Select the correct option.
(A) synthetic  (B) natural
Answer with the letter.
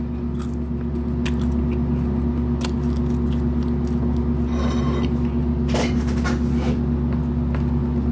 B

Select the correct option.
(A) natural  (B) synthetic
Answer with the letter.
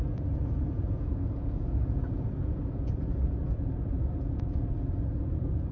B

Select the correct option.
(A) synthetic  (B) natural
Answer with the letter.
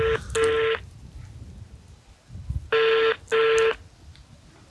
B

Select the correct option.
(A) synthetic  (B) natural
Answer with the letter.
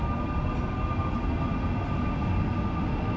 B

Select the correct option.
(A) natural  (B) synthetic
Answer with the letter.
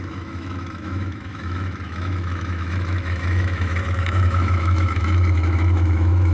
B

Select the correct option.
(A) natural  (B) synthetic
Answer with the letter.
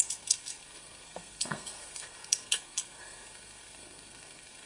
B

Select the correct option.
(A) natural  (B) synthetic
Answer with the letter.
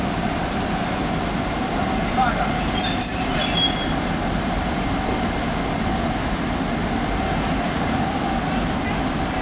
A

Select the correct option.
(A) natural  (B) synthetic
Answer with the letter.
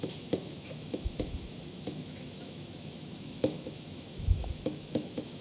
B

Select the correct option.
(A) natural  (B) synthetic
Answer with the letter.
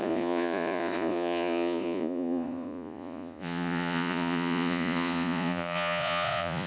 B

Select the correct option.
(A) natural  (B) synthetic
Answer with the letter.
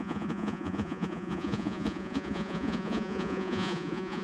B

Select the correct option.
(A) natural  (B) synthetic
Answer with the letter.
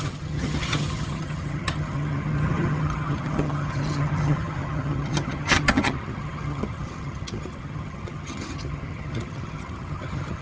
B